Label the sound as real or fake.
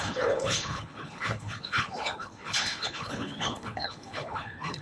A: fake